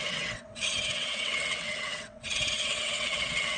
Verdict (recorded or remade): remade